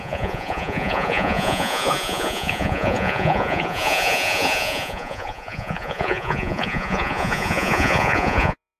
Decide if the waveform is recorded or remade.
remade